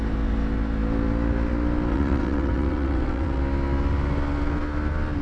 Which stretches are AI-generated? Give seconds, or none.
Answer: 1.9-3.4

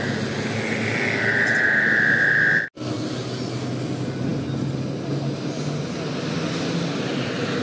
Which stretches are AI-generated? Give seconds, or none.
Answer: none

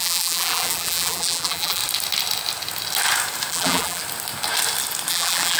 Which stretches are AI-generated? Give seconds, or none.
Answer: 0.0-1.8; 3.5-4.0; 5.1-5.6

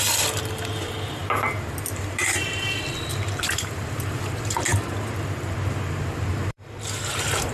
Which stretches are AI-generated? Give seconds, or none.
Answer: 0.0-7.5

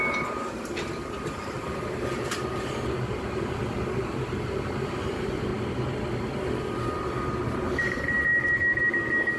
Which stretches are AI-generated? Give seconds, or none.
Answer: 0.0-5.5; 7.8-8.3